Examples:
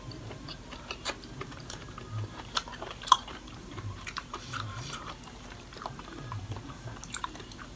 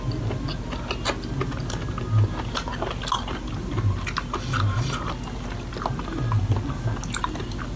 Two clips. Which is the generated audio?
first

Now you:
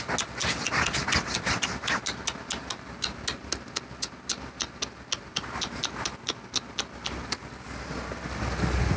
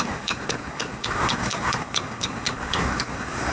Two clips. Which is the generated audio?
second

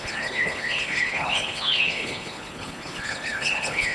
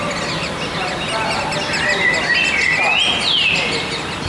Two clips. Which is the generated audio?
first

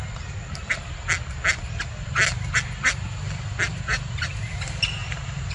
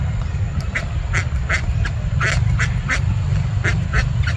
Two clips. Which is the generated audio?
second